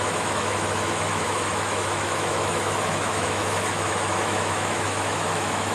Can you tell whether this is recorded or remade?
remade